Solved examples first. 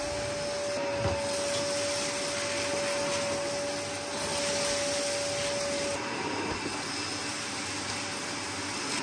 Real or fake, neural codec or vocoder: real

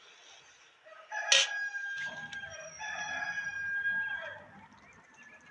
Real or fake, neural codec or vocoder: real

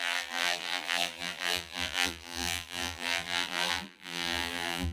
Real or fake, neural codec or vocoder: fake, vocoder, BigVGAN v2